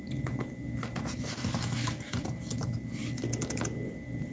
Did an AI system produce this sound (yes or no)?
no